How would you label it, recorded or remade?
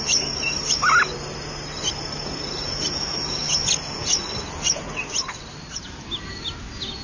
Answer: recorded